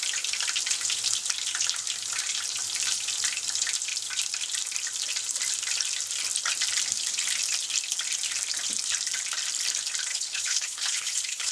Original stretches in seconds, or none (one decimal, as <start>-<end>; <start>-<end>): 0.0-10.1